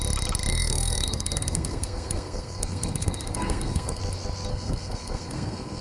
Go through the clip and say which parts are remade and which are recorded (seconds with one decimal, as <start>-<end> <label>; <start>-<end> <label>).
0.0-0.5 recorded; 0.5-4.0 remade; 4.0-4.5 recorded; 4.5-5.8 remade